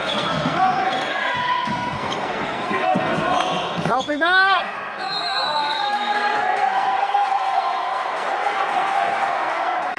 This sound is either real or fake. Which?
fake